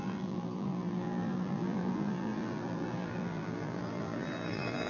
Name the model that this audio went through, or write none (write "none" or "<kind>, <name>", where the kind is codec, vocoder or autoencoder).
vocoder, BigVGAN v2